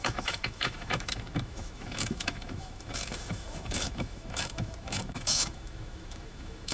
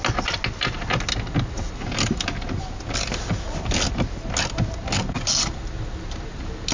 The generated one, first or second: first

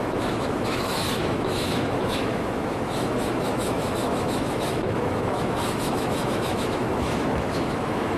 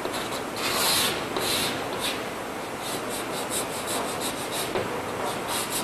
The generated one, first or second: first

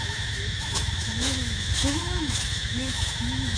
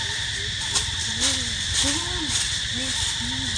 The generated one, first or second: first